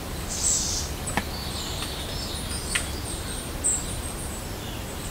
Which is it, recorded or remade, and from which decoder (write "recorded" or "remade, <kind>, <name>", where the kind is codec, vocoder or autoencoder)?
recorded